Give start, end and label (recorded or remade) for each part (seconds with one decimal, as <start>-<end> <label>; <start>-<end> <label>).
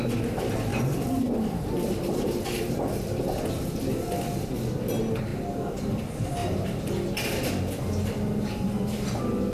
0.0-0.7 recorded; 0.7-2.6 remade; 2.6-6.4 recorded; 6.4-6.9 remade; 6.9-9.5 recorded